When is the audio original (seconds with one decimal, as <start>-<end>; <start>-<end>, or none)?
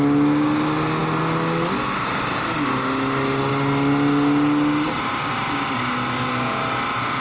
0.0-7.2